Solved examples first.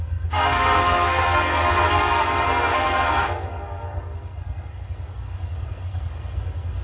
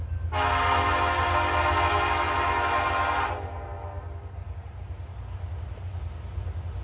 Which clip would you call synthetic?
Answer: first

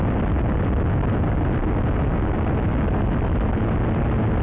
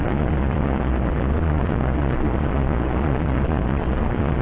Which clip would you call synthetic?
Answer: second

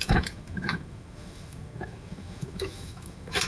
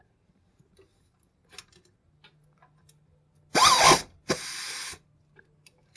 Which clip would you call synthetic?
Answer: first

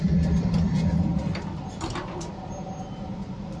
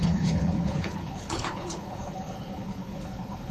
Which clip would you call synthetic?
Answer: second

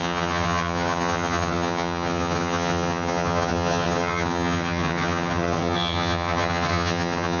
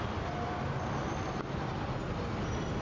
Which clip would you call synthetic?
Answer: first